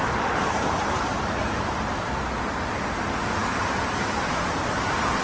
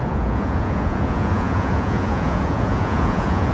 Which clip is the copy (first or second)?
second